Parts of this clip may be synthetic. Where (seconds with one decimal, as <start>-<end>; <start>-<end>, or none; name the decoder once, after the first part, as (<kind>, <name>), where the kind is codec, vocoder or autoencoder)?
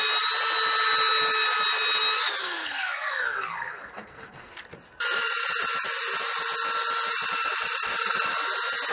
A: 2.4-4.5 (codec, SNAC)